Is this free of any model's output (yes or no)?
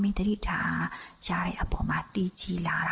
yes